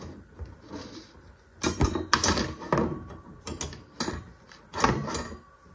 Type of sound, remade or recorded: recorded